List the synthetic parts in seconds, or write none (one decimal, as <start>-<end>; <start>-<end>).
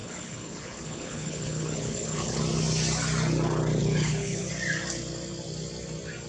0.0-2.4; 3.8-4.5